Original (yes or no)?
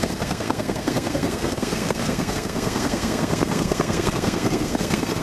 no